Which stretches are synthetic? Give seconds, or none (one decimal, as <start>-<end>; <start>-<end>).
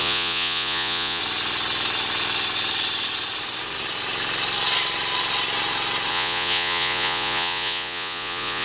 0.0-1.2; 6.1-8.6